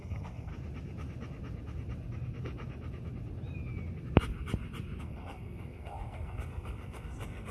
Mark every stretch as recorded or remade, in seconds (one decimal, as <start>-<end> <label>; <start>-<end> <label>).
0.0-0.5 remade; 0.5-5.0 recorded; 5.0-7.5 remade